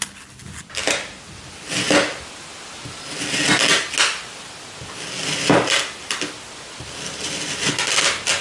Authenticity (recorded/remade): recorded